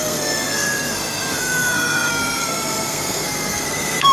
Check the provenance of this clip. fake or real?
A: fake